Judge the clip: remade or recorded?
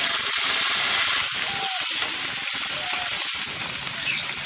recorded